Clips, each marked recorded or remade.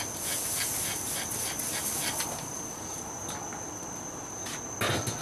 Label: recorded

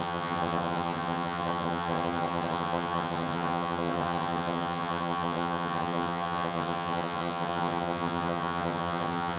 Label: remade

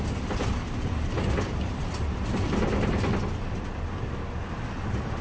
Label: recorded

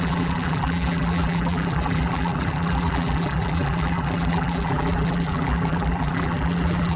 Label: remade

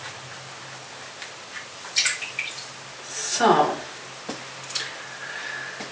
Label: recorded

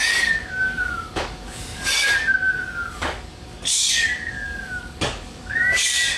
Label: remade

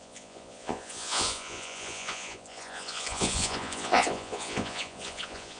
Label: remade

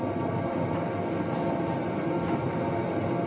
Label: recorded